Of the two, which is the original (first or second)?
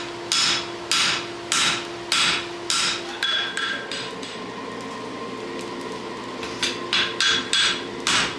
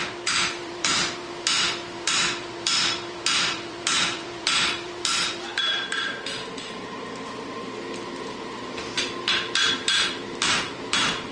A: first